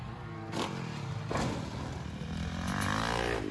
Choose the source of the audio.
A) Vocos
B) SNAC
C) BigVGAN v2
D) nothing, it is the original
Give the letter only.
D